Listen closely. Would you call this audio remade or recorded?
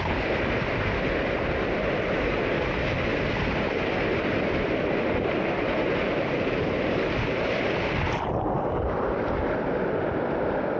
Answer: recorded